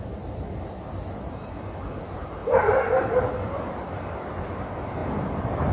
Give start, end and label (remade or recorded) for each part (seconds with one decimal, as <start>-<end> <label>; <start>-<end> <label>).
0.0-5.7 recorded